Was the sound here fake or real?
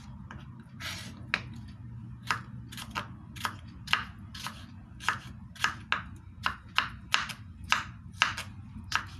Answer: real